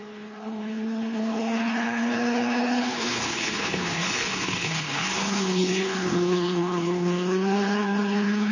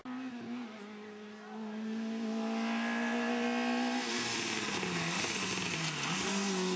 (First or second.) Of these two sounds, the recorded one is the second